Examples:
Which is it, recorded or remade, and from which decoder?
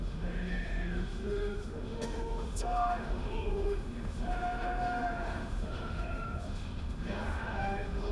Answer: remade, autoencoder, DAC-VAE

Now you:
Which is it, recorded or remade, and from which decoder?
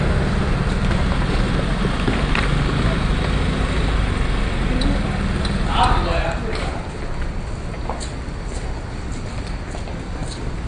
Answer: recorded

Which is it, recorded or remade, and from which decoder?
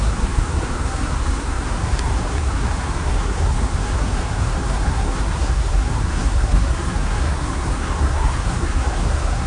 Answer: remade, codec, SNAC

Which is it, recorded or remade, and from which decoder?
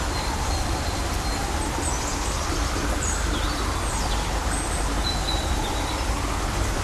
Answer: recorded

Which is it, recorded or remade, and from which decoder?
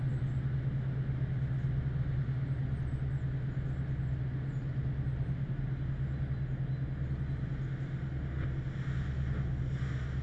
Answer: recorded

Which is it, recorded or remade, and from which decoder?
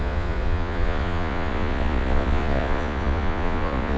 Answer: remade, vocoder, Vocos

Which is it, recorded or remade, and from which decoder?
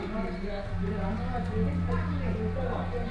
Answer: recorded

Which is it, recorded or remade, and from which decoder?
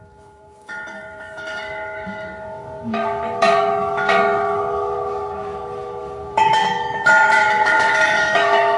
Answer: remade, codec, DAC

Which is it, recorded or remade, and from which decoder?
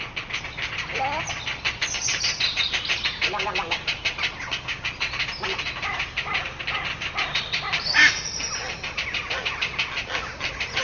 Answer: recorded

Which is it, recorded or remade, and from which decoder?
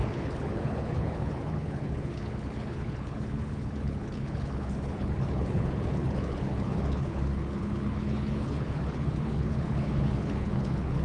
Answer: remade, codec, HILCodec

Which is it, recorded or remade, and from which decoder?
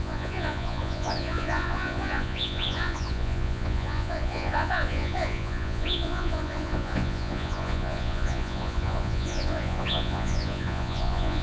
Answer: remade, vocoder, Vocos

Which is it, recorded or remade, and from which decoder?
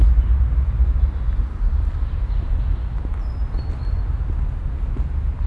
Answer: recorded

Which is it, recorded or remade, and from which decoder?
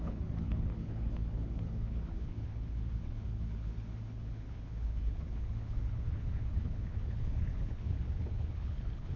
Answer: remade, codec, HILCodec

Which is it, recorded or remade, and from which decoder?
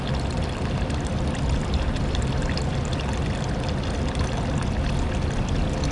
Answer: recorded